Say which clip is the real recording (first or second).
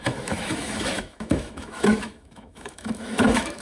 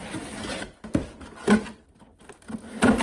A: second